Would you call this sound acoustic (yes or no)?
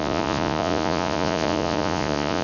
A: no